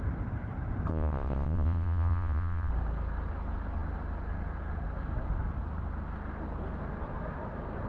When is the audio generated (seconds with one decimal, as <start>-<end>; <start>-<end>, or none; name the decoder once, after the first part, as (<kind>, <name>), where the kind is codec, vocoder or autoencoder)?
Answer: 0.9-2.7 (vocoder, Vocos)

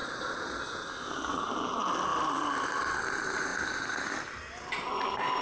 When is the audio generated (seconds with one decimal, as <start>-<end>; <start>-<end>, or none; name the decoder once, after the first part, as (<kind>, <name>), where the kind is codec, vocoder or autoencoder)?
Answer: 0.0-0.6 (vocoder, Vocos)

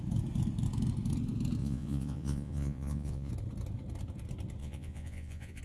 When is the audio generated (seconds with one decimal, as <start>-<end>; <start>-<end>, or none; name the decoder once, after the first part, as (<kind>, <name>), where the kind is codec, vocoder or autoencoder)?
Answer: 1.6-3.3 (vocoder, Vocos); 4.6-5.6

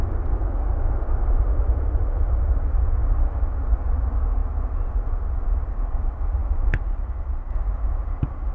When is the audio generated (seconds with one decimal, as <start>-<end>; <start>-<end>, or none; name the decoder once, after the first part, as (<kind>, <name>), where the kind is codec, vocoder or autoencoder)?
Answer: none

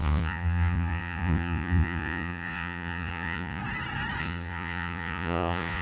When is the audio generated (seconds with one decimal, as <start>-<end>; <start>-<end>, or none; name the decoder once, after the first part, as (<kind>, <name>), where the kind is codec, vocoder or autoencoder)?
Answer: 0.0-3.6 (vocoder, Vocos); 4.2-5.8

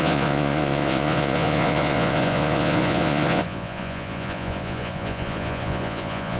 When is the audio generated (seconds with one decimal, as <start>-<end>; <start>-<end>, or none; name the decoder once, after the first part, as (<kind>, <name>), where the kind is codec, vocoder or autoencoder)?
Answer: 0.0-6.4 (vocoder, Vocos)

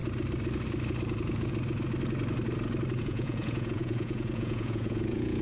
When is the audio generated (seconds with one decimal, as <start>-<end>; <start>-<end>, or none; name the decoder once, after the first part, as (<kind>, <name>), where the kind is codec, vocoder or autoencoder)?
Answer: 3.0-5.4 (vocoder, Vocos)

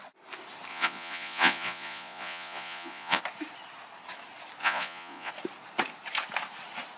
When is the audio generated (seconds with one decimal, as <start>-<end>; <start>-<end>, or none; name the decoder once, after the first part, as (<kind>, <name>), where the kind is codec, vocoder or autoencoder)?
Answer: 0.7-3.2 (vocoder, Vocos); 4.6-5.3